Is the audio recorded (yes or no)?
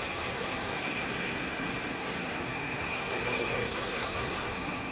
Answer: no